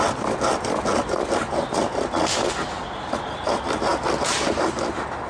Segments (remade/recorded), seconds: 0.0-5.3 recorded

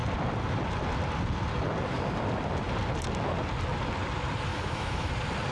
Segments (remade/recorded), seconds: 0.0-4.5 recorded; 4.5-5.1 remade; 5.1-5.5 recorded

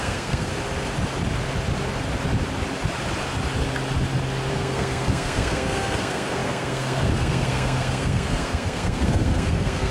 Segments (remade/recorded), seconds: 0.0-0.5 remade; 0.5-4.5 recorded; 4.5-9.9 remade

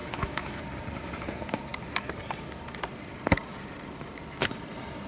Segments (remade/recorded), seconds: 0.0-0.6 remade; 0.6-5.1 recorded